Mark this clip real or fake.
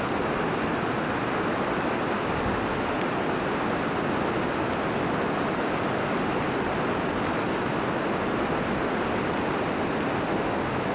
real